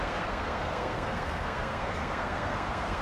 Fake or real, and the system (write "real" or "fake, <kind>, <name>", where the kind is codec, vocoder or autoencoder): fake, codec, SNAC